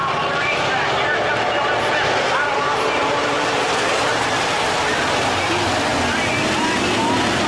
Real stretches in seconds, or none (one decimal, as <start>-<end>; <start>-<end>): 0.0-2.5; 4.3-7.5